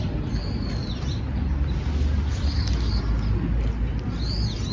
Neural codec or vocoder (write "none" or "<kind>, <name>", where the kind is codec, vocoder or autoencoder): none